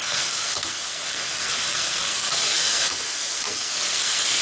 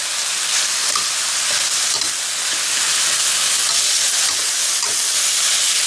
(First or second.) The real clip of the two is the second